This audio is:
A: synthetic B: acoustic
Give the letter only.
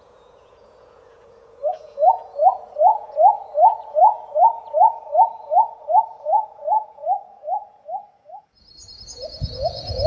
A